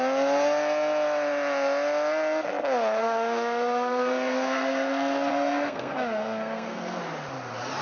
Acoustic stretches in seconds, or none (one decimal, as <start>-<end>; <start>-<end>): 0.0-3.0; 7.0-7.8